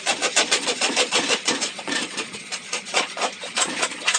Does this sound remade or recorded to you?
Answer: remade